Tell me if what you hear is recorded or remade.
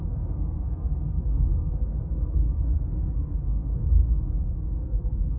remade